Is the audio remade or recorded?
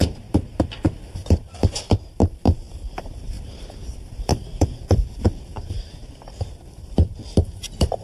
remade